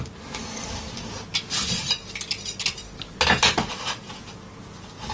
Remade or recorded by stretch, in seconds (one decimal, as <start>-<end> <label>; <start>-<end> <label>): 0.0-5.1 recorded